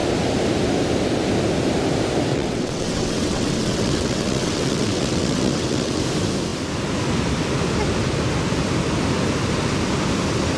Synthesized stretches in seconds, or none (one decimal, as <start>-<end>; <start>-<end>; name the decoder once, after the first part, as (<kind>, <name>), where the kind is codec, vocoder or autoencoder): 2.3-6.0 (vocoder, WaveNeXt)